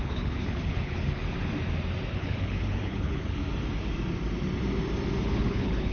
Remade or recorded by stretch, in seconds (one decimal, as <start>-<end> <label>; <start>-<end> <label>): 0.0-1.2 remade; 1.2-2.1 recorded; 2.1-3.4 remade; 3.4-5.2 recorded; 5.2-5.9 remade